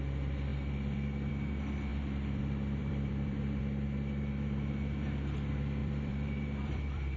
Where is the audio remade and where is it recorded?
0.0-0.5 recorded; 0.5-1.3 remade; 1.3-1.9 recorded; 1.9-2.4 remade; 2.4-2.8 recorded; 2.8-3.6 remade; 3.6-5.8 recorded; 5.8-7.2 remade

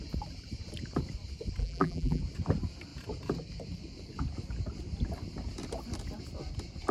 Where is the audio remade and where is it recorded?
0.0-1.6 recorded; 1.6-2.2 remade; 2.2-6.9 recorded

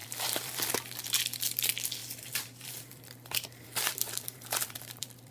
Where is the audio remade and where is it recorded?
0.0-0.7 remade; 0.7-2.0 recorded; 2.0-5.3 remade

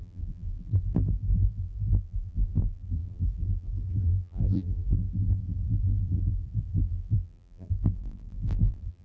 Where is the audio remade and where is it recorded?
0.0-9.0 remade

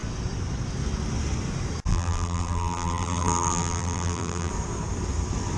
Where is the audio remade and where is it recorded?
0.0-1.9 recorded; 1.9-4.5 remade; 4.5-5.6 recorded

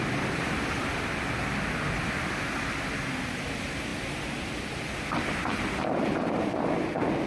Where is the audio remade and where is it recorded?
0.0-3.9 recorded; 3.9-4.7 remade; 4.7-7.3 recorded

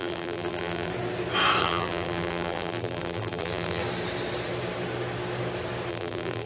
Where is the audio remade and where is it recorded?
0.0-0.9 remade; 0.9-1.6 recorded; 1.6-3.8 remade; 3.8-5.9 recorded; 5.9-6.5 remade

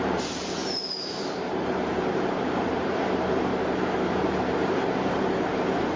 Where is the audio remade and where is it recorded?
0.0-0.6 remade; 0.6-1.2 recorded; 1.2-3.5 remade; 3.5-4.1 recorded; 4.1-6.0 remade